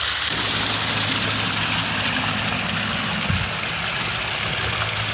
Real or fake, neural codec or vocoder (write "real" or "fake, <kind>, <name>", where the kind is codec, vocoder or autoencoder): real